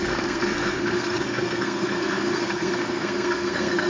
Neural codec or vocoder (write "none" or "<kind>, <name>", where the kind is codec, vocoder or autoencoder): codec, SNAC